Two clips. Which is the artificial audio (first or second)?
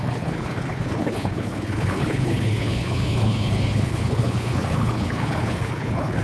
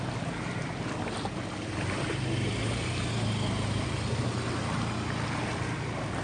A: first